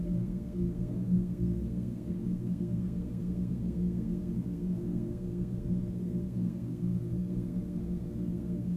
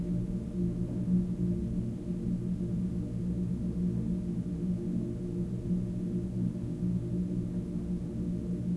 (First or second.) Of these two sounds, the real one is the second